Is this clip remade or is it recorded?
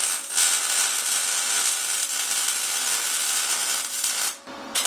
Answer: recorded